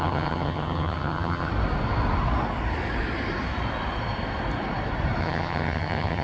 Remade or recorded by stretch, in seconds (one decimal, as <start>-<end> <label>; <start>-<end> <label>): 0.0-1.5 remade; 1.5-5.2 recorded; 5.2-6.2 remade